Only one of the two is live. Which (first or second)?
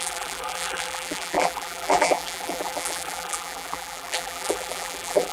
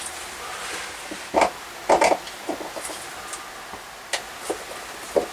second